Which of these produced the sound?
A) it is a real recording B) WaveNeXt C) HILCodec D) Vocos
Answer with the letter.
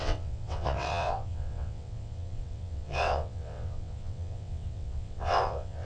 B